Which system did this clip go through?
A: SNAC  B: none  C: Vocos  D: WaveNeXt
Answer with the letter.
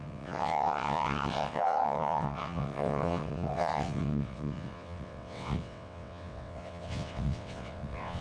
D